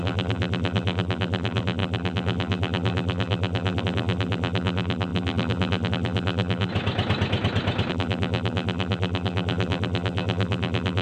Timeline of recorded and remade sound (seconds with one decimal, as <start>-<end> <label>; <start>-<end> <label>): 0.0-6.7 remade; 6.7-7.9 recorded; 7.9-11.0 remade